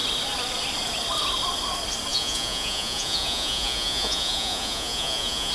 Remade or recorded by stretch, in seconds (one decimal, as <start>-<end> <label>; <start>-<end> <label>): 0.0-2.1 recorded; 2.1-5.5 remade